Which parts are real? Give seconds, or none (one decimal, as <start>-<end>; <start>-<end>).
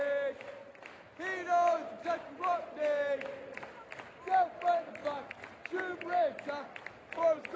0.0-7.6